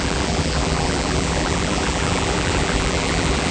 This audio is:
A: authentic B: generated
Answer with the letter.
B